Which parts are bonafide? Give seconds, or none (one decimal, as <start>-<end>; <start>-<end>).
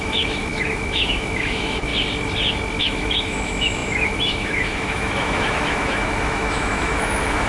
1.9-2.8